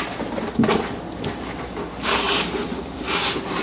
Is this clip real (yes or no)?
yes